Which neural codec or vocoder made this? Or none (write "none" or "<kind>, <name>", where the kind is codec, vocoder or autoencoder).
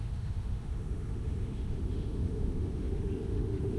autoencoder, DAC-VAE